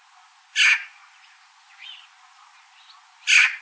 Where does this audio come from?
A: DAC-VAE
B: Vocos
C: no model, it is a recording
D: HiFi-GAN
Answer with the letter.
C